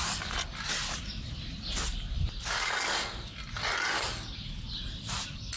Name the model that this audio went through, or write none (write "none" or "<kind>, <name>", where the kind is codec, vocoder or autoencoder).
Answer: none